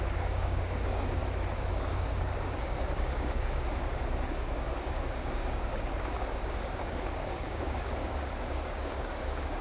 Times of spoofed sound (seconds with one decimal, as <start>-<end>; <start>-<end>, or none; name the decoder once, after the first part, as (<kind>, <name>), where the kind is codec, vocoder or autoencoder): 0.0-1.2 (codec, DAC); 1.7-9.6